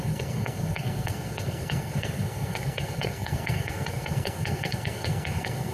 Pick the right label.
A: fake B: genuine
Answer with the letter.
A